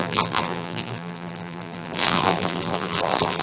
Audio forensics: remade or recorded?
remade